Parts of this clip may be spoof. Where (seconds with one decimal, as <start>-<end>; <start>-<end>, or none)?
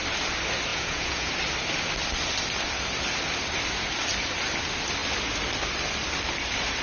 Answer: 0.7-1.3